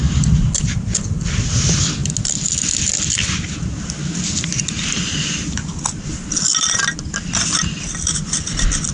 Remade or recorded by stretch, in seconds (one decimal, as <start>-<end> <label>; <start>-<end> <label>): 0.0-8.9 recorded